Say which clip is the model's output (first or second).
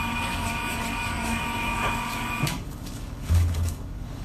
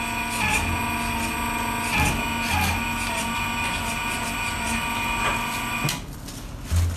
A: first